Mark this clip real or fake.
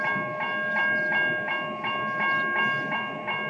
real